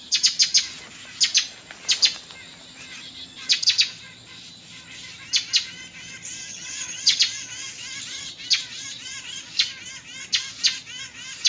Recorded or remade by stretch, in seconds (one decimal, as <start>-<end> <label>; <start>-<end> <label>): 0.0-6.5 recorded; 6.5-7.2 remade; 7.2-11.5 recorded